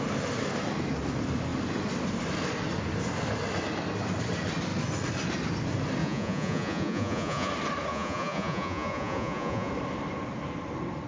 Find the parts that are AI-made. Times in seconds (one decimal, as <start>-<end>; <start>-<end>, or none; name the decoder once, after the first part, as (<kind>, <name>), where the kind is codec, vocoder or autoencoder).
6.0-7.5 (vocoder, Vocos); 7.9-9.7